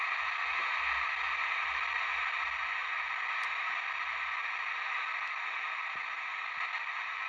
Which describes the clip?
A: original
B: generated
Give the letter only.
A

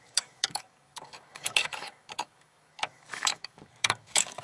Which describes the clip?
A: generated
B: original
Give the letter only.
A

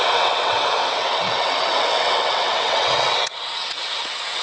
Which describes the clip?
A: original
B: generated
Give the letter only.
B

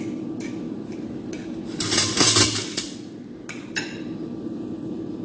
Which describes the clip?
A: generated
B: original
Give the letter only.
B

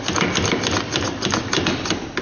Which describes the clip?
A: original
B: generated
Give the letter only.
A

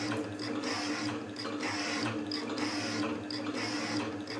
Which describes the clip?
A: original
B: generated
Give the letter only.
A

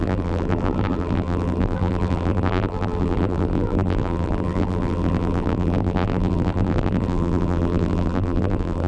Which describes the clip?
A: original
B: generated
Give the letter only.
B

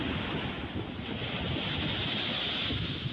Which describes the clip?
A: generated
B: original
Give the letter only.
B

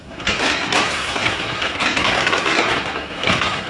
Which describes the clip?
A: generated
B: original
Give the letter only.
A